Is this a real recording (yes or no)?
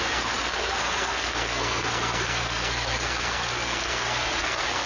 no